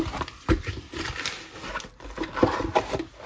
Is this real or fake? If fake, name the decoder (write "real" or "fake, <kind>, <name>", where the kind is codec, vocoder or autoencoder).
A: real